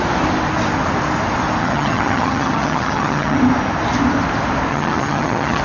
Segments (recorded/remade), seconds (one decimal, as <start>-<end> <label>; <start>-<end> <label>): 0.0-1.6 recorded; 1.6-3.4 remade; 3.4-4.7 recorded; 4.7-5.6 remade